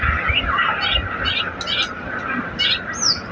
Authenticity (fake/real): real